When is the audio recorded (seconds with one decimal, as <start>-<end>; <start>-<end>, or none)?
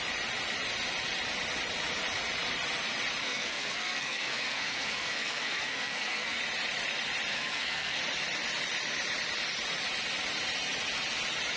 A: 0.0-3.2; 6.4-7.3; 8.0-11.6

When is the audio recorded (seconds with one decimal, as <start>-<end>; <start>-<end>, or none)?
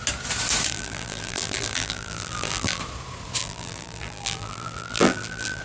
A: 0.0-0.7; 2.8-3.4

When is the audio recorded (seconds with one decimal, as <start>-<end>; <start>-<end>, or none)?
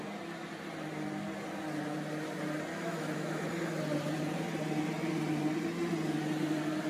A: 0.0-2.7; 3.5-6.9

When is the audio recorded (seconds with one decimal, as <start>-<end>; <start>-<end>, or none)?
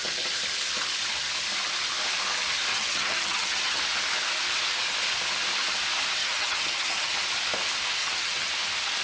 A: 0.0-2.7; 3.8-6.2; 7.1-8.0; 8.5-9.0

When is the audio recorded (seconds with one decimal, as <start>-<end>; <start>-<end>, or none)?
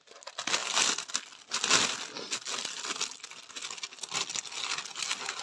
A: 0.0-5.4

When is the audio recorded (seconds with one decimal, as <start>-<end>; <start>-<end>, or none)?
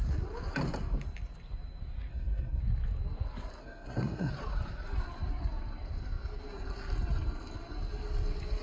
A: 0.0-2.1; 2.6-3.6; 4.3-8.6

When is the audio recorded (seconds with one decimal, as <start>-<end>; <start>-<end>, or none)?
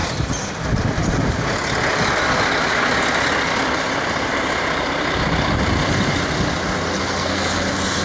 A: 0.0-7.0; 7.6-8.0